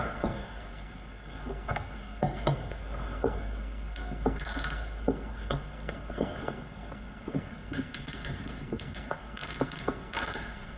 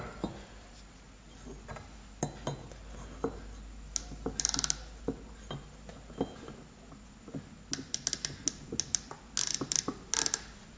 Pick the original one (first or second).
second